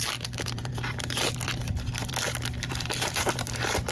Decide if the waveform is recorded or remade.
remade